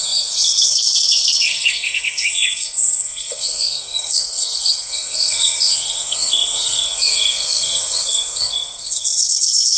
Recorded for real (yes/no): no